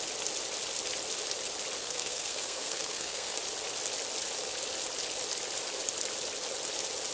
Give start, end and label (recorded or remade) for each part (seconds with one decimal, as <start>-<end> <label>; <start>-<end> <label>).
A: 0.0-1.8 recorded; 1.8-3.4 remade; 3.4-7.1 recorded